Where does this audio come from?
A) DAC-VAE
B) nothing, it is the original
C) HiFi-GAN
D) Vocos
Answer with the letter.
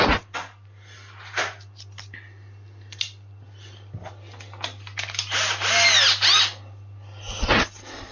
B